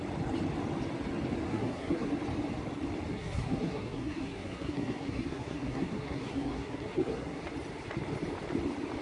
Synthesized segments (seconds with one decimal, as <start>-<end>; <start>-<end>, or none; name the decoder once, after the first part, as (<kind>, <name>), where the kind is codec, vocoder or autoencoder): 1.5-2.1 (codec, SNAC); 3.1-7.4